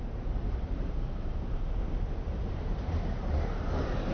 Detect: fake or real fake